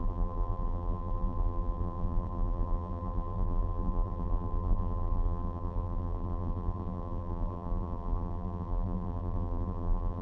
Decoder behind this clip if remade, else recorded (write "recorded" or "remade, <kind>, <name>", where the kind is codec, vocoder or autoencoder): remade, vocoder, BigVGAN v2